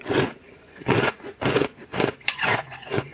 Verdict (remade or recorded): remade